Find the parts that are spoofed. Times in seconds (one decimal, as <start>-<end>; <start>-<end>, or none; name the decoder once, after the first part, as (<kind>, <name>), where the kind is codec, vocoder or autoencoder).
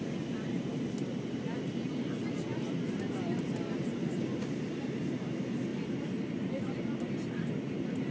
2.5-3.7 (vocoder, BigVGAN v2); 5.7-8.1